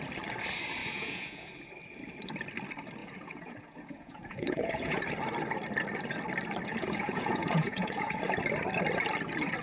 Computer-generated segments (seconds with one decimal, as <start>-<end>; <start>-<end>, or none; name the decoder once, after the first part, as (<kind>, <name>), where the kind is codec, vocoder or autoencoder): 0.8-1.5 (vocoder, Vocos); 3.0-5.0; 6.7-8.2